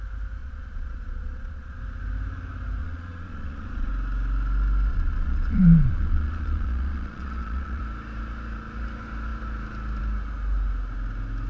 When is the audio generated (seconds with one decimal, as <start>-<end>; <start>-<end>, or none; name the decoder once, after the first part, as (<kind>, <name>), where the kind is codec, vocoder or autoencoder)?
0.4-1.8 (vocoder, Vocos); 2.8-3.9; 4.9-7.8